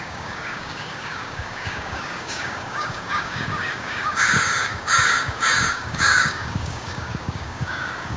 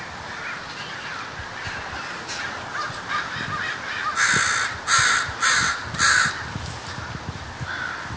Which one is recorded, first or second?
second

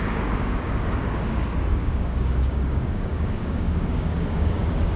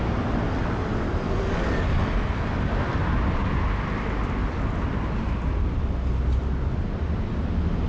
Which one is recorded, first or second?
second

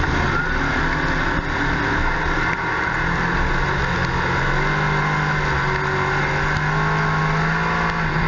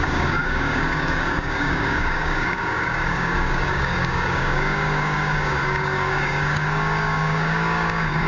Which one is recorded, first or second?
first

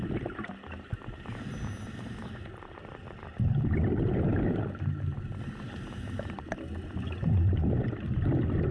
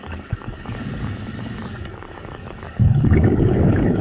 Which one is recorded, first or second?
first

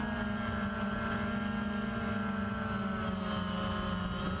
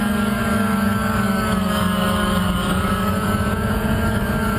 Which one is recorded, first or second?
first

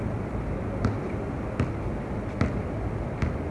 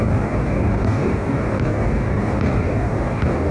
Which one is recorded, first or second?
first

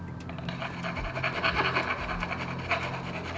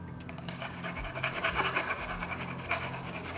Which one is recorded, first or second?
first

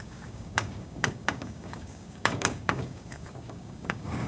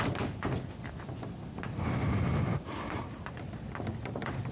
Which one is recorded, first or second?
second